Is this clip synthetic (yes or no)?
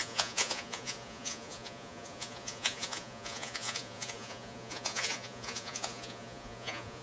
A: yes